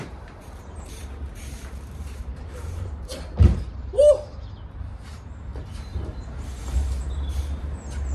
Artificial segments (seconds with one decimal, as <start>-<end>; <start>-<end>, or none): 0.0-5.5; 6.6-8.1